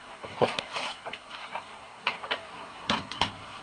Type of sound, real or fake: fake